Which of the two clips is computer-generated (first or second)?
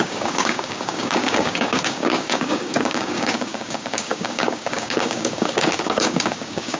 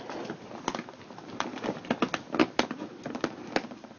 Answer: first